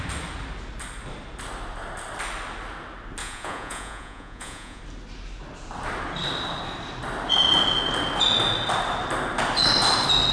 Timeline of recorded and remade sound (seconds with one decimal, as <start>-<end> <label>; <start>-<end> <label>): 0.0-3.2 recorded; 3.2-4.8 remade; 4.8-10.3 recorded